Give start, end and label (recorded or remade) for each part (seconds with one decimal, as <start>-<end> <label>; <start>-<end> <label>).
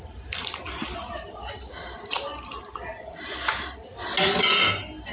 0.0-3.9 remade; 3.9-4.5 recorded; 4.5-5.1 remade